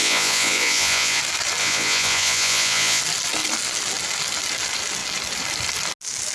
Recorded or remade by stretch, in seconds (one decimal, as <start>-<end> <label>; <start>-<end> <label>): 0.0-1.2 remade; 1.2-1.6 recorded; 1.6-3.0 remade; 3.0-6.3 recorded

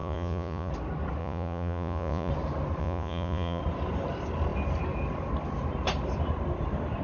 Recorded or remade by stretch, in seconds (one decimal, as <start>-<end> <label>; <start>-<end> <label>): 0.0-0.7 remade; 0.7-1.2 recorded; 1.2-2.3 remade; 2.3-2.8 recorded; 2.8-3.6 remade; 3.6-7.0 recorded

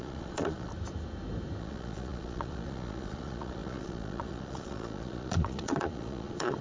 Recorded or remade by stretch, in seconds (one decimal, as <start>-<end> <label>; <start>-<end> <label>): 0.0-0.7 remade; 0.7-1.6 recorded; 1.6-6.6 remade

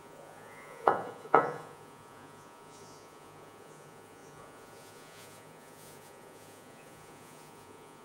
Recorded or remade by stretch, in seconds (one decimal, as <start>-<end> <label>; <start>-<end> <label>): 0.0-8.0 remade